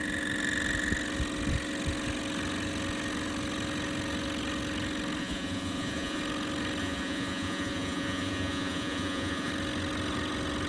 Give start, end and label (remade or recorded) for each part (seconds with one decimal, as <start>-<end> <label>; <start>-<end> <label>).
0.0-5.2 recorded; 5.2-6.2 remade; 6.2-6.8 recorded; 6.8-9.5 remade; 9.5-10.7 recorded